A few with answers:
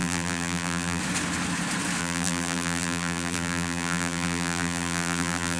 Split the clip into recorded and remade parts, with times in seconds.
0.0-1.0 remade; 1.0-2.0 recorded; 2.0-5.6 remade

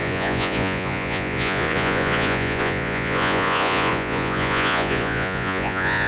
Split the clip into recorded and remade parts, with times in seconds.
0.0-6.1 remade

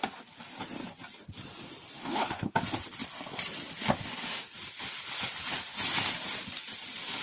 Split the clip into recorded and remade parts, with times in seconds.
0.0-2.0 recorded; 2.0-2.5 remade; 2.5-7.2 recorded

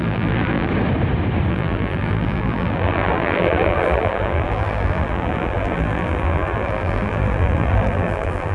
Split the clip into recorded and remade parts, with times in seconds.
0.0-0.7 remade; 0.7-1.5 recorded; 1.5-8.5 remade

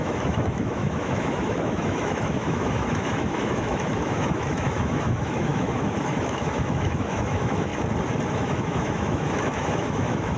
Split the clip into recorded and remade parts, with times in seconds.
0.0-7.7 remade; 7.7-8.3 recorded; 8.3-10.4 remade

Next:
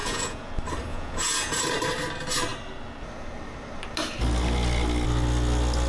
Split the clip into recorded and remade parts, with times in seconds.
0.0-0.5 remade; 0.5-0.9 recorded; 0.9-1.6 remade; 1.6-5.9 recorded